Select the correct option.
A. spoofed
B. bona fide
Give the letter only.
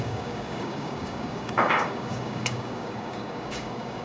A